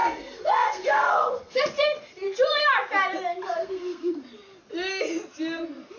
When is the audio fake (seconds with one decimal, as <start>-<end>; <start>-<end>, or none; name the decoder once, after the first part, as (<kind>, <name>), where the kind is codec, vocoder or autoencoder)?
0.0-1.6 (codec, SNAC); 3.6-4.2